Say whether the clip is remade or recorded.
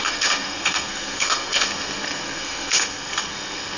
remade